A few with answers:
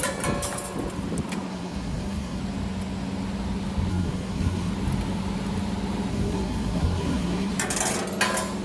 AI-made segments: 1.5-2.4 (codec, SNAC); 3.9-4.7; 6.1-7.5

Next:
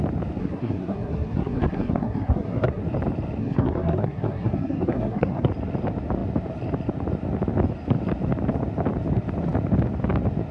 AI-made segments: 0.4-2.8 (codec, SNAC); 3.4-5.5

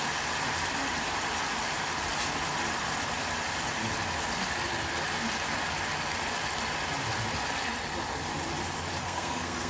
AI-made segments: 9.0-9.7 (codec, SNAC)

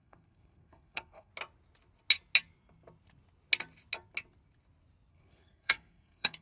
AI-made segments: 0.0-1.3 (codec, SNAC); 5.1-6.4

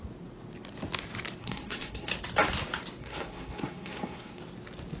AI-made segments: 1.4-2.1 (codec, SNAC); 3.0-4.4